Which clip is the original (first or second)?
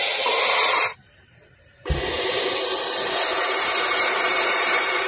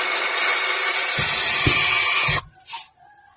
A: second